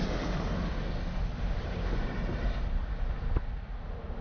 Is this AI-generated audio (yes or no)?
no